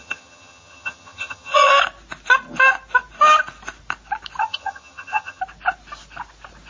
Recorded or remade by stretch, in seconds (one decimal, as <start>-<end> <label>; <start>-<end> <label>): 0.0-1.7 remade; 1.7-4.4 recorded; 4.4-5.4 remade; 5.4-6.7 recorded

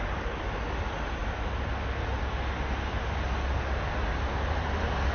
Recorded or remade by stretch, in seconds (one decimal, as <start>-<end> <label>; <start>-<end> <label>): 0.0-5.1 recorded

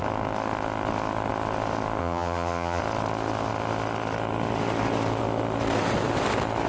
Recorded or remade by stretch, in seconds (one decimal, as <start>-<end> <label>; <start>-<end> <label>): 0.0-2.0 recorded; 2.0-2.8 remade; 2.8-6.7 recorded